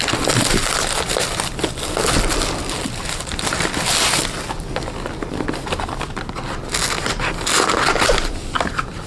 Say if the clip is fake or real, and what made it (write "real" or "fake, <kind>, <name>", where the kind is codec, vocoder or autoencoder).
real